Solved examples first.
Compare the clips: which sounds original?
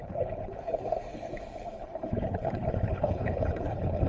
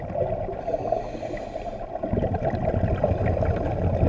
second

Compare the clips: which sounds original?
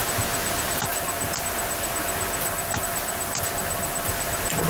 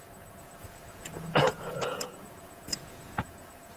first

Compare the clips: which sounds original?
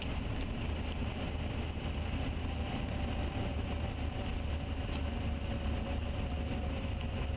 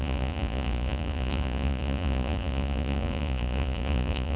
first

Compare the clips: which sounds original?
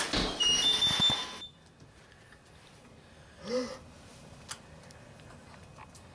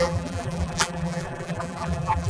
first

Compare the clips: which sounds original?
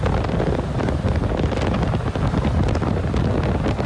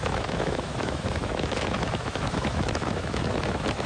first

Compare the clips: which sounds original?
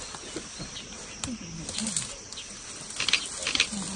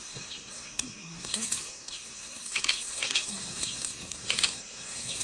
first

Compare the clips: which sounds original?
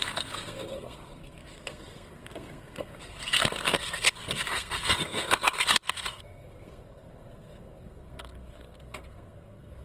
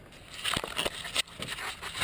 second